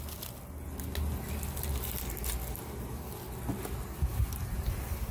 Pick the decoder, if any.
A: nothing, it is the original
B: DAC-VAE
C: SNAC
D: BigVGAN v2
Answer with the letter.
A